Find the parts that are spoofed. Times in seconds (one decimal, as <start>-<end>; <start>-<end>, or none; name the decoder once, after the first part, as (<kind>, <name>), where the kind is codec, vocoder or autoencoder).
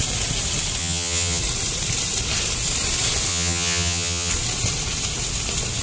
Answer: 0.8-1.4 (vocoder, HiFi-GAN); 3.3-4.3